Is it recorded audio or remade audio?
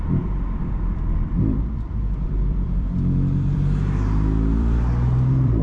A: remade